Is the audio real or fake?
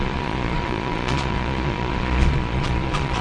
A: fake